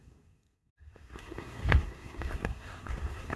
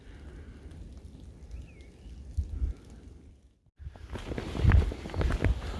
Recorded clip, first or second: second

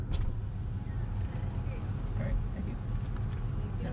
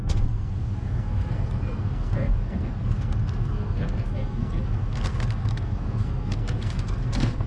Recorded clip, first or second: first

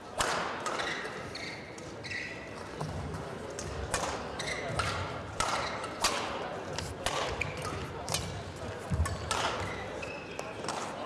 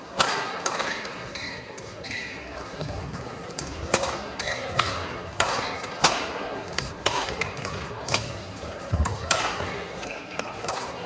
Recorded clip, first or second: first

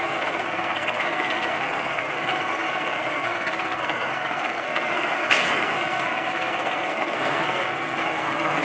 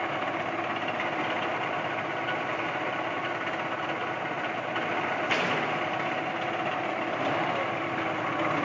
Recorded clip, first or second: second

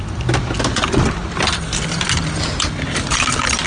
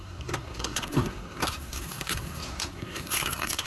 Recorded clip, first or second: first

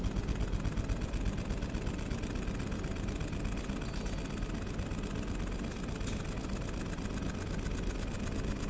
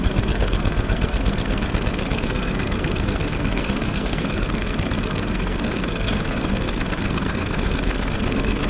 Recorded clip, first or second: first